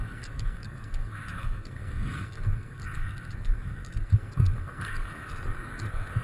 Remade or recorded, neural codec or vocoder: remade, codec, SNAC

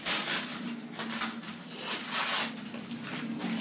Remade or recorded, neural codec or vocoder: recorded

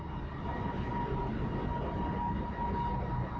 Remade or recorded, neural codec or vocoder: recorded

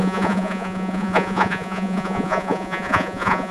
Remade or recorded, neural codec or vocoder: remade, vocoder, Vocos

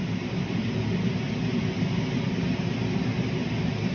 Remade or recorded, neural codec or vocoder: recorded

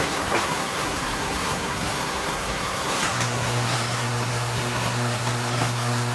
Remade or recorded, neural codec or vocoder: remade, codec, SNAC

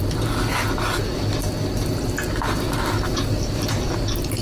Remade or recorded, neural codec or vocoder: recorded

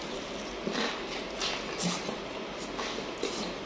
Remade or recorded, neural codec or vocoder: recorded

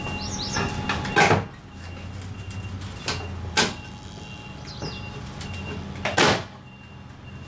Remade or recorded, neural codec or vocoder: recorded